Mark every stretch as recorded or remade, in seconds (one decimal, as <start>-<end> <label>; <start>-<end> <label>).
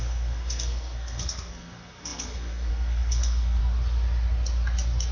0.0-3.6 remade; 3.6-5.1 recorded